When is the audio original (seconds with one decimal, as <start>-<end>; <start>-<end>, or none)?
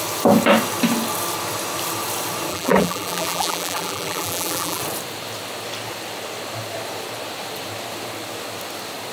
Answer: 0.0-2.5; 4.8-9.1